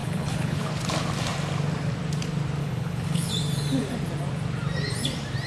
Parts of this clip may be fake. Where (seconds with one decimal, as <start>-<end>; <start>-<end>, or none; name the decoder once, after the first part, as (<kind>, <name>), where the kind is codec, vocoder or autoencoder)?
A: 0.0-0.7 (codec, HILCodec); 2.6-3.3